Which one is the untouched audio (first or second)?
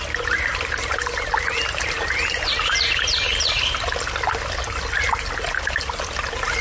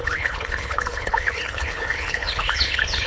first